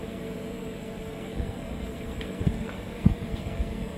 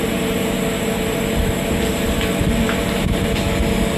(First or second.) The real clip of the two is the second